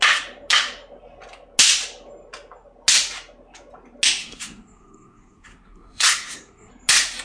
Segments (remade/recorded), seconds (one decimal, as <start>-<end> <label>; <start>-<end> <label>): 0.0-4.2 recorded; 4.2-6.7 remade; 6.7-7.2 recorded